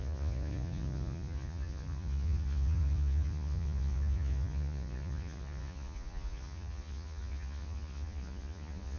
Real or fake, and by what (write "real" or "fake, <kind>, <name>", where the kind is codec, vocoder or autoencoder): fake, vocoder, Vocos